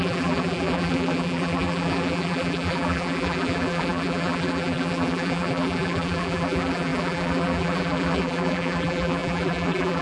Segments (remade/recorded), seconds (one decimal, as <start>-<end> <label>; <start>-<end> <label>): 0.0-10.0 remade